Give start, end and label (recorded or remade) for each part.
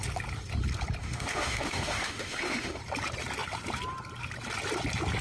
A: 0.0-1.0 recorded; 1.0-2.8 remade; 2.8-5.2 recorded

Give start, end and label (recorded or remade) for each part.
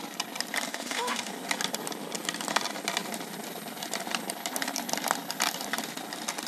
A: 0.0-0.7 recorded; 0.7-1.3 remade; 1.3-6.5 recorded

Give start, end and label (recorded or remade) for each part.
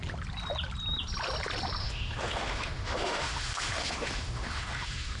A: 0.0-1.8 recorded; 1.8-5.2 remade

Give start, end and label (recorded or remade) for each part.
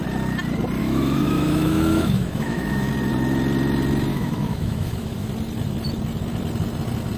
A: 0.0-0.8 recorded; 0.8-2.9 remade; 2.9-4.1 recorded; 4.1-5.3 remade; 5.3-7.2 recorded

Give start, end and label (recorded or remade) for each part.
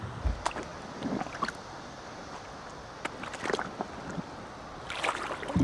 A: 0.0-5.6 recorded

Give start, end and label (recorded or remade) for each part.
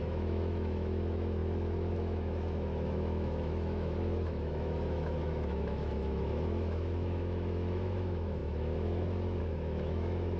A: 0.0-10.4 remade